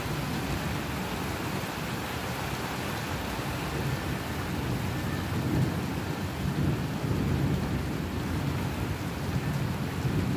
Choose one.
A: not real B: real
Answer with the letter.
B